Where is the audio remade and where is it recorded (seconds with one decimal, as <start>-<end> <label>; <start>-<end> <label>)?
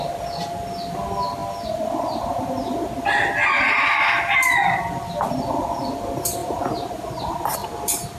0.0-8.2 recorded